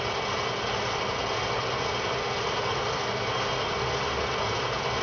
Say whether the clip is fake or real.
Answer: real